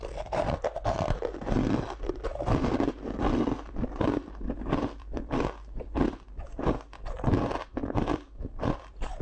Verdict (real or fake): fake